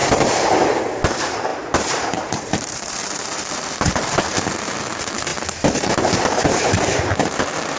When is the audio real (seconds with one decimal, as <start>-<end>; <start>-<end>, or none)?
none